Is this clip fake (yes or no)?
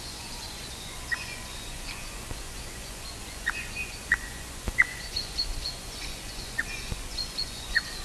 yes